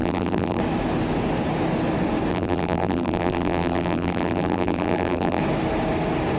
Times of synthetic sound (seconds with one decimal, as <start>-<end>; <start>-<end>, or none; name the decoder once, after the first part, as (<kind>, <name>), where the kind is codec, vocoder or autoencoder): 0.0-0.6 (vocoder, BigVGAN v2); 2.3-5.4